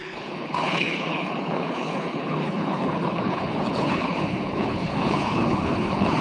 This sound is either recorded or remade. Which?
remade